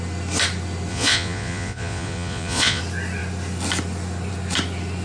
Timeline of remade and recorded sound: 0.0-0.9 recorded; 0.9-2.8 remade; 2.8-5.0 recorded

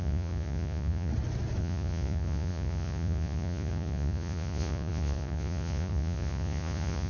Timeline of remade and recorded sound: 0.0-1.1 remade; 1.1-1.6 recorded; 1.6-7.1 remade

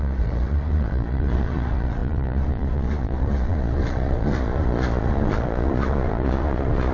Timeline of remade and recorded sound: 0.0-6.9 remade

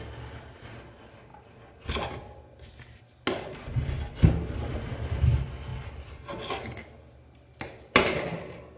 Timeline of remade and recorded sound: 0.0-8.8 recorded

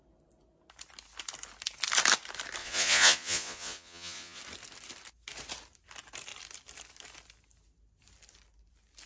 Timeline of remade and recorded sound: 0.0-2.6 recorded; 2.6-4.4 remade; 4.4-9.1 recorded

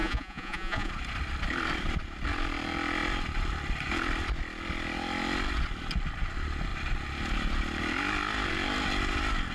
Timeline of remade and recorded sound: 0.0-0.9 remade; 0.9-9.5 recorded

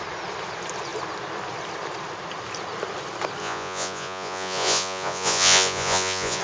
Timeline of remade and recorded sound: 0.0-3.4 recorded; 3.4-6.4 remade

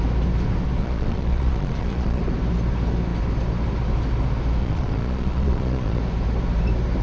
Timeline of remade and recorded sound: 0.0-0.8 recorded; 0.8-2.2 remade; 2.2-4.6 recorded; 4.6-6.0 remade; 6.0-7.0 recorded